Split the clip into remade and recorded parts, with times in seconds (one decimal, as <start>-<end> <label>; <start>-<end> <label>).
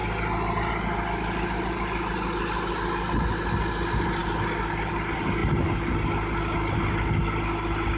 0.0-8.0 recorded